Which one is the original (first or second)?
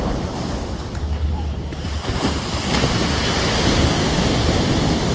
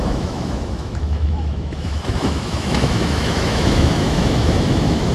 first